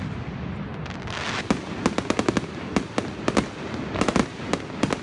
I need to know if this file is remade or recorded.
recorded